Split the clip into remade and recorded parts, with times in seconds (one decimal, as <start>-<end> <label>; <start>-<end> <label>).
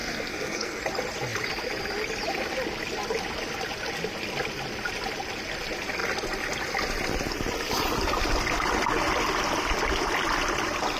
0.0-0.8 remade; 0.8-11.0 recorded